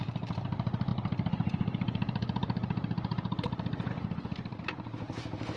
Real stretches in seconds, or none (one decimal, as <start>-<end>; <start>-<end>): none